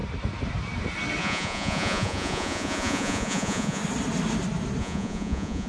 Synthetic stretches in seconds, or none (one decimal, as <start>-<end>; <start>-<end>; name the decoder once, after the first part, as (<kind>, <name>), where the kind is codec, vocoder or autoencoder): 1.2-3.8 (vocoder, Vocos); 4.8-5.7